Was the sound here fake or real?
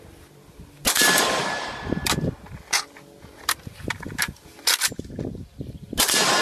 real